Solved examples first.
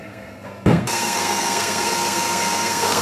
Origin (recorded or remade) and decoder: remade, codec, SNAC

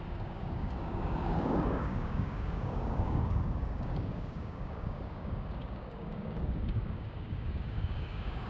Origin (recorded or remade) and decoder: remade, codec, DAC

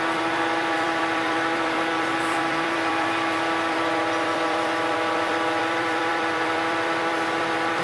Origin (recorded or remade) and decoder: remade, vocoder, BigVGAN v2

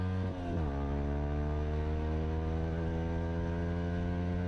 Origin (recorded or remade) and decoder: recorded